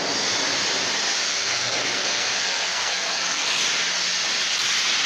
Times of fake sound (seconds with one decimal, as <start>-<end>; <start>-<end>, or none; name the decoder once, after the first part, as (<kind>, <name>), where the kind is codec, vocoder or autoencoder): 1.3-3.6 (codec, SNAC)